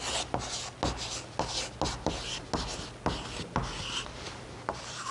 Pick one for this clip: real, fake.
real